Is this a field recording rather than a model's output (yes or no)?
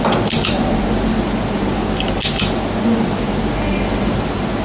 yes